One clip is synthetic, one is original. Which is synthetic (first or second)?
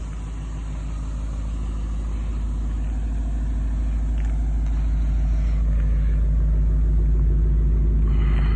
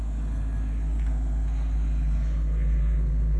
second